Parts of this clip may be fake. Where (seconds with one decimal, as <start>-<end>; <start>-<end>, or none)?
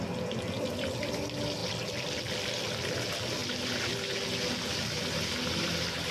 none